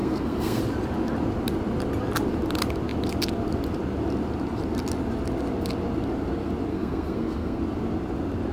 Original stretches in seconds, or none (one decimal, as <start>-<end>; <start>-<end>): 0.6-6.7; 7.6-8.5